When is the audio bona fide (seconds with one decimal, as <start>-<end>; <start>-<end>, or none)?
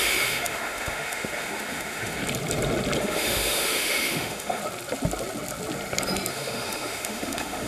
2.2-3.0; 4.6-6.3